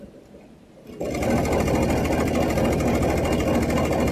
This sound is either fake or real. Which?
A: real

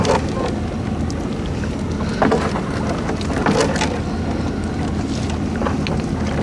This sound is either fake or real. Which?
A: real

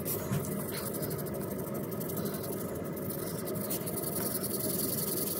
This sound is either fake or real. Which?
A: real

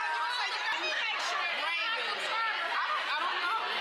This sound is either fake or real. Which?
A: real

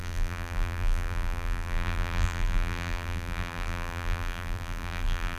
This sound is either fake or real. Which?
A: fake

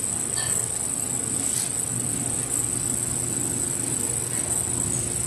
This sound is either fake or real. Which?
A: real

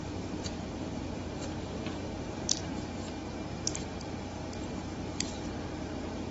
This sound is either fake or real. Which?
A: fake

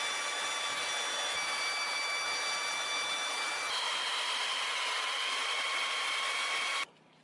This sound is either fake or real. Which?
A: real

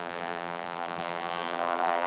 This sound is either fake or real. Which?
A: fake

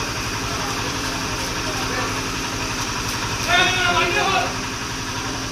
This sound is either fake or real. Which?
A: fake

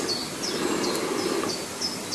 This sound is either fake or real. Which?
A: real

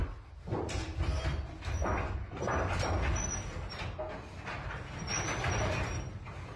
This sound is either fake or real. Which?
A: real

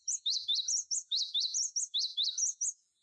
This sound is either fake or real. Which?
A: fake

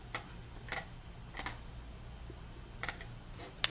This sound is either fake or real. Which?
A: real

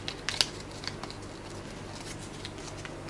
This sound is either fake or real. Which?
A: real